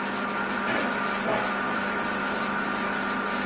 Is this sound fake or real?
real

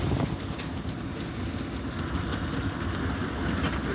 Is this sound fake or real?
real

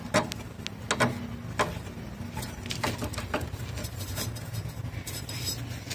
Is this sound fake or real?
real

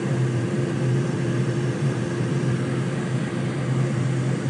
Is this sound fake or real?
fake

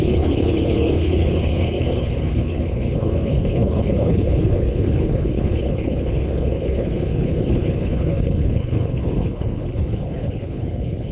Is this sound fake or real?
fake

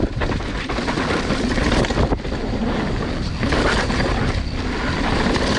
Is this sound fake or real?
real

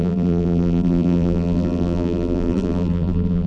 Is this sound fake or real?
fake